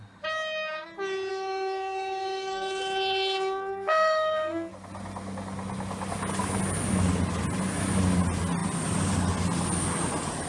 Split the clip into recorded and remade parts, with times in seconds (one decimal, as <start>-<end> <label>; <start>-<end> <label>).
0.0-1.3 recorded; 1.3-4.7 remade; 4.7-10.5 recorded